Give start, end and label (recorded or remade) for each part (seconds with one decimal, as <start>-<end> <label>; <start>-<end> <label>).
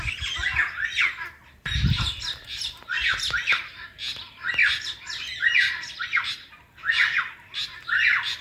0.0-8.4 recorded